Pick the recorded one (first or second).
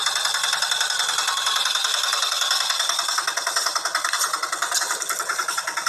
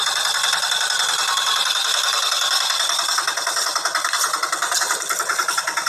first